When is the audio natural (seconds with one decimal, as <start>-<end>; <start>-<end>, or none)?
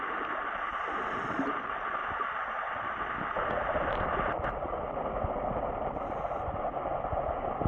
0.0-7.7